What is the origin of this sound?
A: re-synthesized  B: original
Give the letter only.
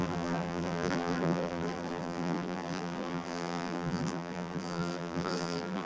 A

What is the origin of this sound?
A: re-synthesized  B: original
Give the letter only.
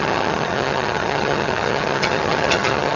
A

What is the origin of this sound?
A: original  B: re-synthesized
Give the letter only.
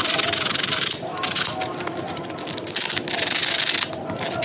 A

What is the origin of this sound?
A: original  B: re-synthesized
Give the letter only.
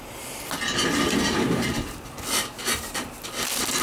A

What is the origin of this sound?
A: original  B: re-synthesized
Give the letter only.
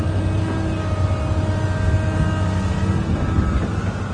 A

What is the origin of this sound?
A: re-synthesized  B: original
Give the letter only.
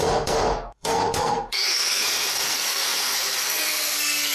A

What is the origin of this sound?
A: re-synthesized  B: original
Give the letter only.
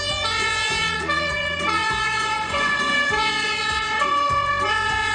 A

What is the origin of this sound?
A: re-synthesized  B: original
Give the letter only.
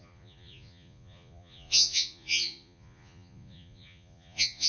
A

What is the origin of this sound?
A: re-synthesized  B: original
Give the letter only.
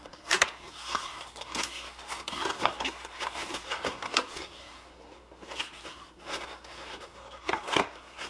A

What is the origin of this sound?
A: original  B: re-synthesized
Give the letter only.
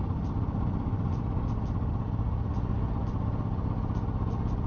A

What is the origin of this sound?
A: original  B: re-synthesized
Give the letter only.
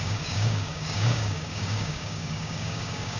B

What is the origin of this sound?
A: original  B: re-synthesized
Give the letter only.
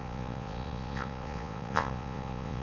B